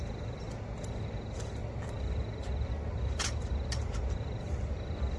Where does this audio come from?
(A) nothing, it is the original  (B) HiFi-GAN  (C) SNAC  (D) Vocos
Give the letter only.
A